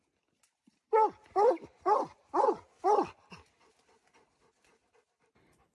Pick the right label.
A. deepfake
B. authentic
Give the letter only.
B